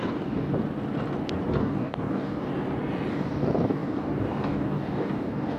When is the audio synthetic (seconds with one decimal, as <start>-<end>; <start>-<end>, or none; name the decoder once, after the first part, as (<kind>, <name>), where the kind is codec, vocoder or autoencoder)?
0.0-0.5 (codec, DAC); 1.5-2.5; 3.1-5.6